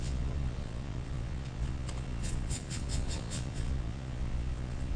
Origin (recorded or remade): remade